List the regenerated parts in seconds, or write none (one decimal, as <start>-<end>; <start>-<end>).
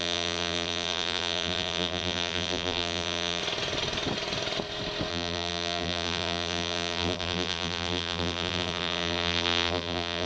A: 0.0-3.4; 5.1-10.3